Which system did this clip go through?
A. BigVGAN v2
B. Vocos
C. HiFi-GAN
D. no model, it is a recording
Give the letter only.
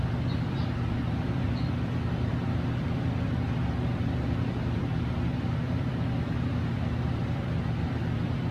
A